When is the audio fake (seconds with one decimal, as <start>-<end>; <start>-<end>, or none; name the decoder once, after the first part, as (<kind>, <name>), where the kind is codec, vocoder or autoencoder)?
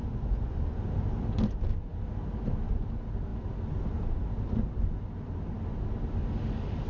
0.0-0.8 (vocoder, Vocos)